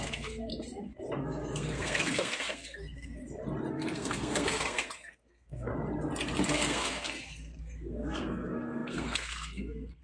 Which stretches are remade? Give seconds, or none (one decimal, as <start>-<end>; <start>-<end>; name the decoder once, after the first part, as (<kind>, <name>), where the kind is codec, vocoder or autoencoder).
0.0-0.5 (codec, SNAC); 1.2-3.2; 3.7-5.7; 6.5-10.0